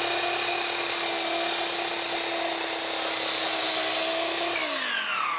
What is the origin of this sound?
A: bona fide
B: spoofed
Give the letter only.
A